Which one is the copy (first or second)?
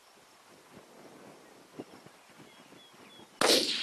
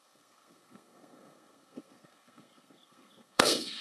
second